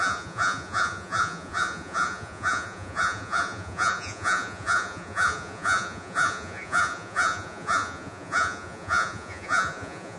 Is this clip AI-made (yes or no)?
yes